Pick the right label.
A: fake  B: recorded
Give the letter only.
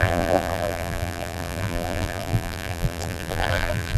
A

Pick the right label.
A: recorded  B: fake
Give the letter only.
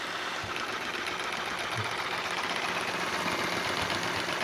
A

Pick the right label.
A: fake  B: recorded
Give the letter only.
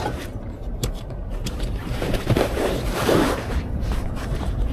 A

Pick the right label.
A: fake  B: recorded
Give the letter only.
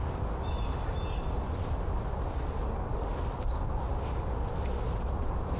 B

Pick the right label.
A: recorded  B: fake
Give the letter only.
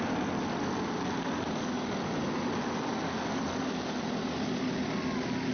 A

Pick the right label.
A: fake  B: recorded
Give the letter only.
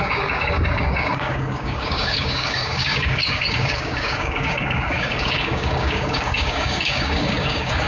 A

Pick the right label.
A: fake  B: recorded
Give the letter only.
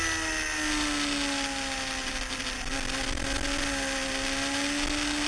B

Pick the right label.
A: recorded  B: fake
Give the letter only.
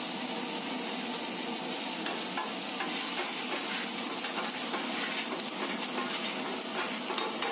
A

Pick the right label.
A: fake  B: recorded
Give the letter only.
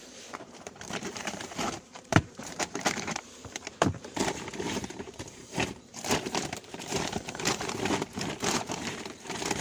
A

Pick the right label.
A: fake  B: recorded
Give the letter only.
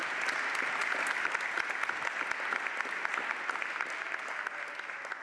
B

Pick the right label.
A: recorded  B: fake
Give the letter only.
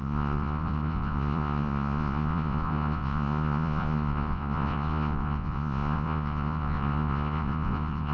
B